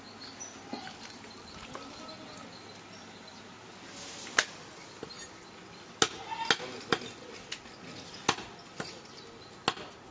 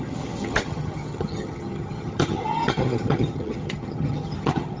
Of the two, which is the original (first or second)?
first